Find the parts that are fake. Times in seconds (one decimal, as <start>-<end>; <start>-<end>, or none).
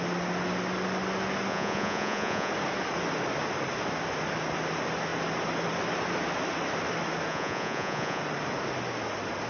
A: 1.5-2.5; 7.3-8.2